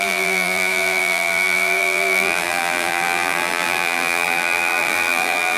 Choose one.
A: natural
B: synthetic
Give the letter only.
B